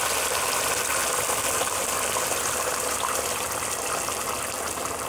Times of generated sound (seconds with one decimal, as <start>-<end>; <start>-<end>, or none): 1.0-4.1